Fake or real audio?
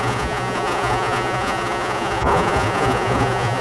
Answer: fake